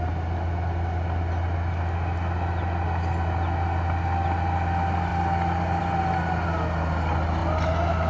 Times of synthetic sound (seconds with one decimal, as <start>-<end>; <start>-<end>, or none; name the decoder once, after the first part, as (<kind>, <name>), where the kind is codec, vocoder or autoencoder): none